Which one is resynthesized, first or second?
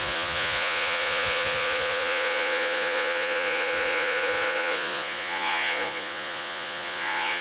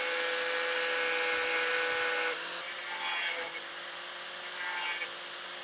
first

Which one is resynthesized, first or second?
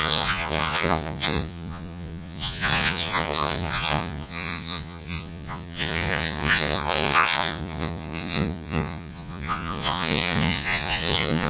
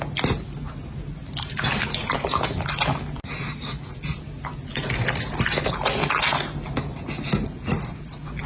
first